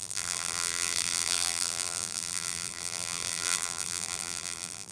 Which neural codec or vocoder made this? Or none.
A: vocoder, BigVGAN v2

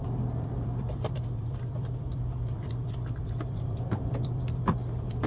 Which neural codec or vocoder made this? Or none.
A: vocoder, BigVGAN v2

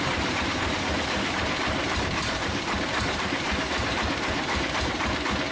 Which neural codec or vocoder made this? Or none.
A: vocoder, BigVGAN v2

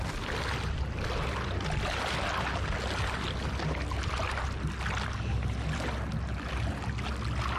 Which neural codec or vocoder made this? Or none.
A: none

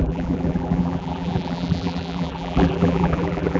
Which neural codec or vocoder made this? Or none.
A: vocoder, BigVGAN v2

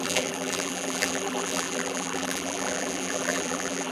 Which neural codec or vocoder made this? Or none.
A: vocoder, BigVGAN v2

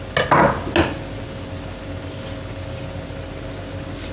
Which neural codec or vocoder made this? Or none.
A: none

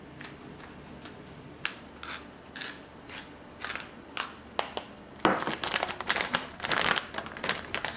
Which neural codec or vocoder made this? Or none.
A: none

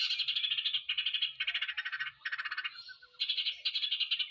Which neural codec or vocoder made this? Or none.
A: none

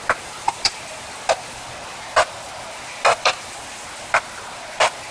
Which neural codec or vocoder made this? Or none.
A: vocoder, BigVGAN v2